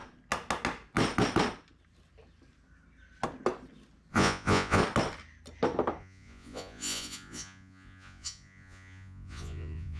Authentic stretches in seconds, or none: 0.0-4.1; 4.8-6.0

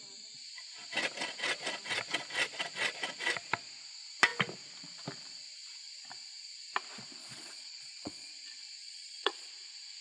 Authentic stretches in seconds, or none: 0.0-7.2; 8.3-8.8; 9.5-10.0